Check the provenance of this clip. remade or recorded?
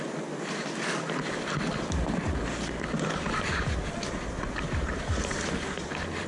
recorded